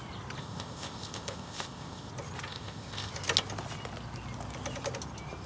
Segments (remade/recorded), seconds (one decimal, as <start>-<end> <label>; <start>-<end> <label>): 0.0-0.4 recorded; 0.4-2.1 remade; 2.1-2.5 recorded; 2.5-3.1 remade; 3.1-5.5 recorded